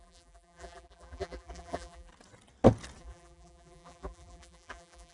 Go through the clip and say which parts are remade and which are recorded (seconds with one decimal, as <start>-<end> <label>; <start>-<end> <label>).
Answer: 0.0-2.1 remade; 2.1-3.0 recorded; 3.0-5.1 remade